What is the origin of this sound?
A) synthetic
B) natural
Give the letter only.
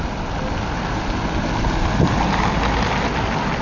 B